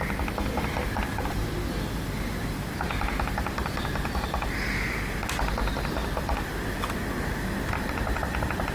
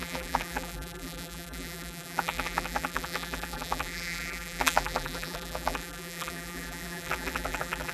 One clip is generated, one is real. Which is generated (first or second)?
second